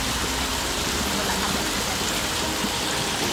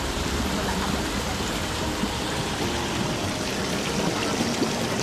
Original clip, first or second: first